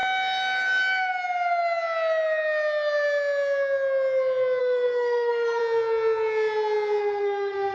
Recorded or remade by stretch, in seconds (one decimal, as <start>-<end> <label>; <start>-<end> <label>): 0.0-4.6 recorded; 4.6-5.6 remade; 5.6-7.0 recorded; 7.0-7.7 remade